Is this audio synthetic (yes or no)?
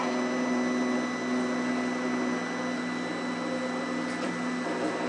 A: no